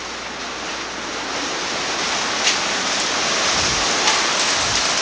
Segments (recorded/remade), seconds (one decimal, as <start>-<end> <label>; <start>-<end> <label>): 0.0-5.0 recorded